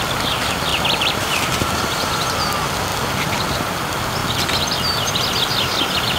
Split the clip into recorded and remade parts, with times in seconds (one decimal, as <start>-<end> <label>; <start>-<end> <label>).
0.0-0.7 recorded; 0.7-2.3 remade; 2.3-6.2 recorded